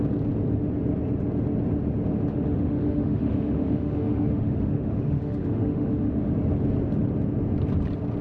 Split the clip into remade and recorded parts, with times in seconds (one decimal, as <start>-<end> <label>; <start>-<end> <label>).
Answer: 0.0-2.3 recorded; 2.3-6.3 remade; 6.3-8.2 recorded